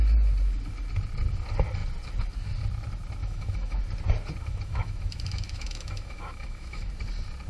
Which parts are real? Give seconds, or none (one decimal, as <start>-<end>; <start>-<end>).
0.0-3.2; 3.8-4.4; 6.9-7.5